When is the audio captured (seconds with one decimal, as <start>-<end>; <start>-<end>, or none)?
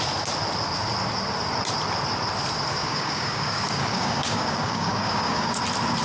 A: 0.0-2.8; 5.6-6.0